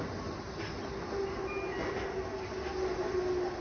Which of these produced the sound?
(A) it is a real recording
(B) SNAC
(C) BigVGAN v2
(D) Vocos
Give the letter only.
A